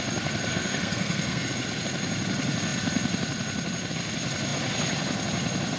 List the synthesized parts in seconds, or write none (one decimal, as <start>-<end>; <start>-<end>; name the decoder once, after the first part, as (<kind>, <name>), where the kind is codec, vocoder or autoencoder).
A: 0.5-1.5 (codec, SNAC)